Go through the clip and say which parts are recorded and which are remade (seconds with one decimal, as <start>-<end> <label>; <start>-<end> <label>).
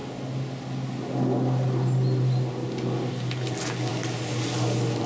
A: 0.0-5.1 recorded